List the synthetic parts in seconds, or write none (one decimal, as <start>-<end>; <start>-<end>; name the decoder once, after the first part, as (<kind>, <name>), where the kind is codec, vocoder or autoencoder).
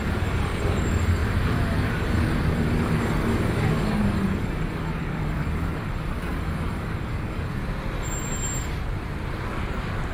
0.0-7.6 (codec, DAC)